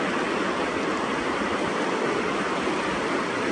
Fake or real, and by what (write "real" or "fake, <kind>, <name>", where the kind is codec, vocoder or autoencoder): real